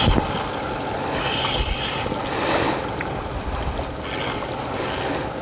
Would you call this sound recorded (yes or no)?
yes